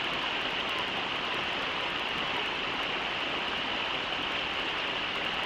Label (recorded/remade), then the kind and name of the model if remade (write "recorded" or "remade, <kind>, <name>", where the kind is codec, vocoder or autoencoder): recorded